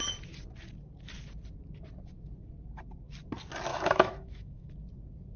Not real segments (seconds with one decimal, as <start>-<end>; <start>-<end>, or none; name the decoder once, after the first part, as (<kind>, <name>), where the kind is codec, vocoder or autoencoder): 3.7-4.7 (autoencoder, DAC-VAE)